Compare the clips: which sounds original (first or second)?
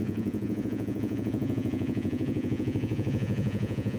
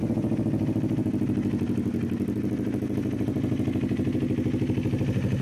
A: second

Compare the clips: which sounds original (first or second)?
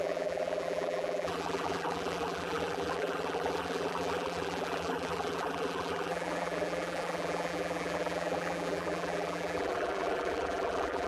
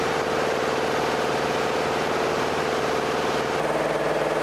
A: second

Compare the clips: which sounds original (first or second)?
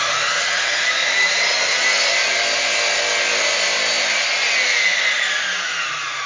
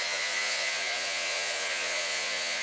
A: first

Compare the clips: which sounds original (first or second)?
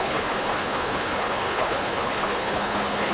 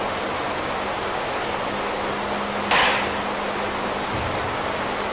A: second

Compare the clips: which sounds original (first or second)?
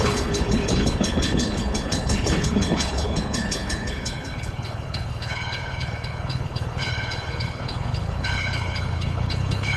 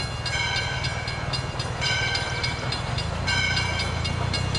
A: second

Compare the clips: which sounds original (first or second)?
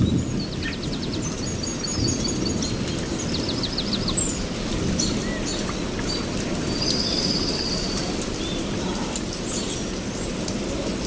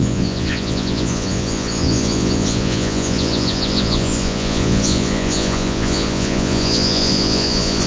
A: first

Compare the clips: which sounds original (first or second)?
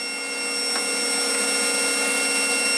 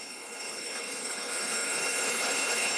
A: first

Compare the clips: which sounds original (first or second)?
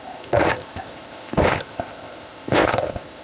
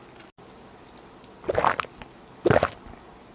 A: second